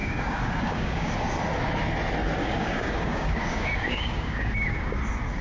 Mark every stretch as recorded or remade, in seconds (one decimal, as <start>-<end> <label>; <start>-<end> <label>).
0.0-1.1 remade; 1.1-2.4 recorded; 2.4-5.0 remade; 5.0-5.4 recorded